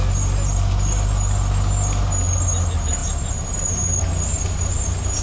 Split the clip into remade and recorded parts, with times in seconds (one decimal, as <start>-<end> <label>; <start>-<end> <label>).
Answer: 0.0-5.2 recorded